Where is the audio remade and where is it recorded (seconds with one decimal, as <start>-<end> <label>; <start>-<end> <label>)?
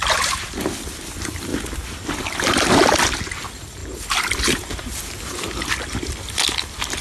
0.0-7.0 recorded